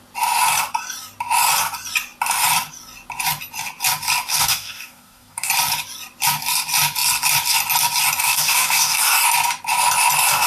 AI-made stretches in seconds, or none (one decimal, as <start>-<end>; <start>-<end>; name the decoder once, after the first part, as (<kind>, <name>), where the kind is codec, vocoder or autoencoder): 4.3-5.5 (codec, DAC); 8.2-9.0